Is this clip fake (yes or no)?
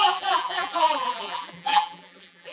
yes